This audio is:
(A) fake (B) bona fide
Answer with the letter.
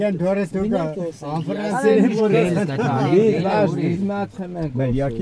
B